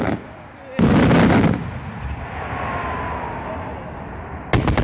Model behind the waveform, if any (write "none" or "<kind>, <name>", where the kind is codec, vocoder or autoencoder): none